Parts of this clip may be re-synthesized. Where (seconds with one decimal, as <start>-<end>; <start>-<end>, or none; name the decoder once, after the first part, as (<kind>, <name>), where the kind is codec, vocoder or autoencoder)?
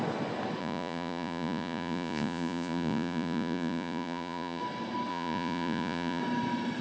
0.6-4.6 (vocoder, Vocos); 5.1-6.2